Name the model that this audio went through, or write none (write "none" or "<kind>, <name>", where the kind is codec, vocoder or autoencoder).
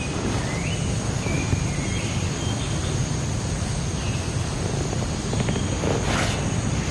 none